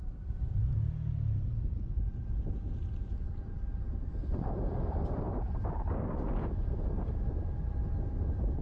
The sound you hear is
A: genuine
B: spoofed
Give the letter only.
A